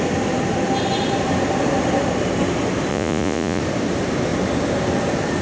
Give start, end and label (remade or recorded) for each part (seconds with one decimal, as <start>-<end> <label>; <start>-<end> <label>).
0.0-2.9 recorded; 2.9-3.6 remade; 3.6-5.4 recorded